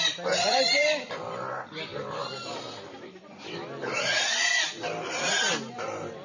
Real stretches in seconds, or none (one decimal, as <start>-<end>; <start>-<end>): 0.0-1.9; 5.1-6.2